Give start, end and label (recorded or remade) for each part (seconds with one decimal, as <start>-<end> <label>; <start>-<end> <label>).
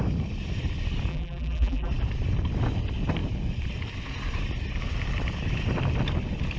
0.0-1.1 recorded; 1.1-1.9 remade; 1.9-6.6 recorded